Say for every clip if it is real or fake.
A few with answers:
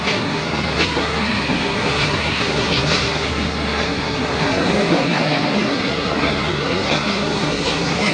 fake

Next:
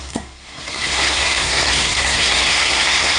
fake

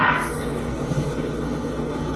fake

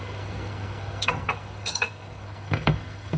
fake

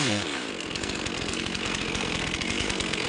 fake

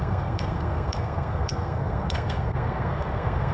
fake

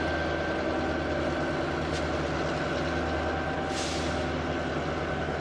real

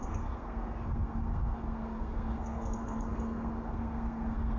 fake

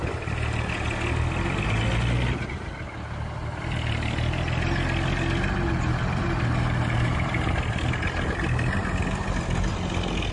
real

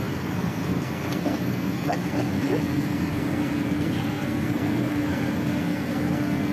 fake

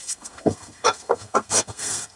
fake